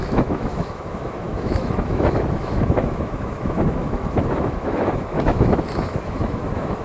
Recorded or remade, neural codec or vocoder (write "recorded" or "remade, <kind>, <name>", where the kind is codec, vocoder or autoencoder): remade, autoencoder, DAC-VAE